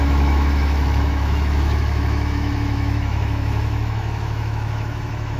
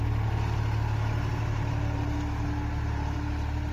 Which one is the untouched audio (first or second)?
second